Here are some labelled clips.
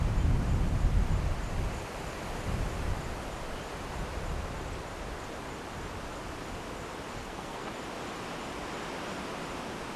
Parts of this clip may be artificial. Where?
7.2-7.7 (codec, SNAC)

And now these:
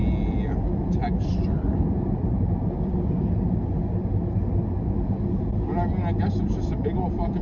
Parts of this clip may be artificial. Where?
none